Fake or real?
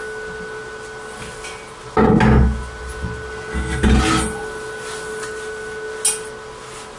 real